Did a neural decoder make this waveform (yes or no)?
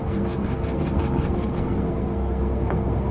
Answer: yes